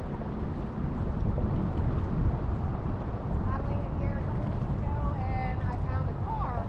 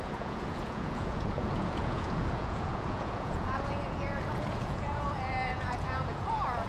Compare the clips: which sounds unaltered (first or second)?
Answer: first